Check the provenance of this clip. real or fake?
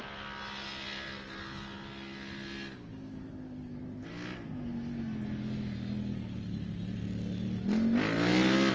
real